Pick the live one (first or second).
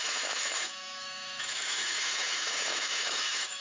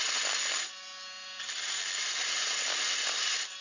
second